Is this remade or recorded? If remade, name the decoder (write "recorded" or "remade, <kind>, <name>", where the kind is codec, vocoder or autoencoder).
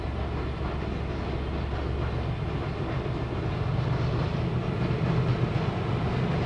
recorded